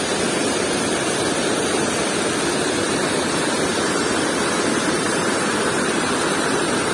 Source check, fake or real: fake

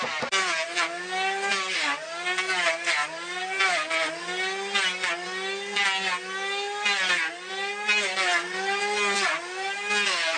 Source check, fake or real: real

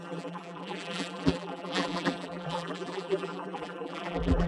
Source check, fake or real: fake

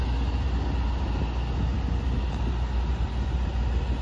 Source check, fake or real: real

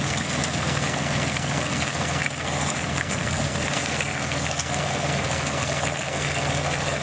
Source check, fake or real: fake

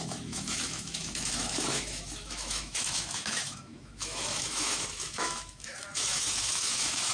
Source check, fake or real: fake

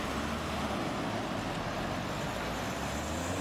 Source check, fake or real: real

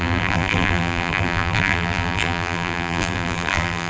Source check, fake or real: fake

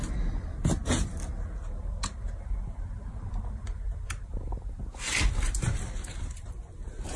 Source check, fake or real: real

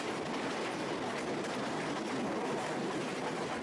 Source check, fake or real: real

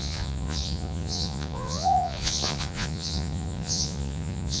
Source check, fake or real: fake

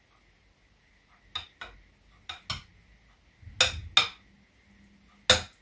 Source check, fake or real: real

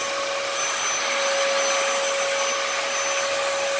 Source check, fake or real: real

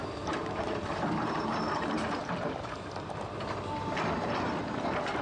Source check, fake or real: fake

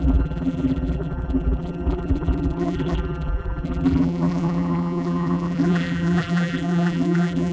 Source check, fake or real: fake